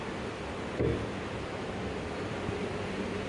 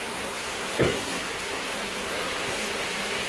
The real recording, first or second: first